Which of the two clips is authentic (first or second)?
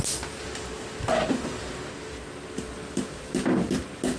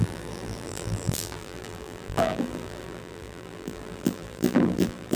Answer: first